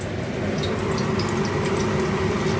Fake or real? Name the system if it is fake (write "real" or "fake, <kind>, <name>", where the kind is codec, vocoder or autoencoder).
real